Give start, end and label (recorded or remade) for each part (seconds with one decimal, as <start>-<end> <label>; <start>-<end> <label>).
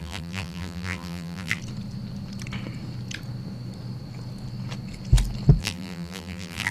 0.0-1.6 remade; 1.6-5.6 recorded; 5.6-6.7 remade